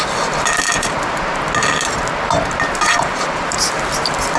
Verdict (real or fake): real